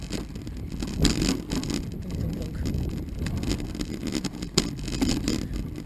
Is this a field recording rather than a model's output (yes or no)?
yes